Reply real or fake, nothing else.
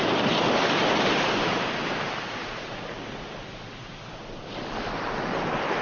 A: real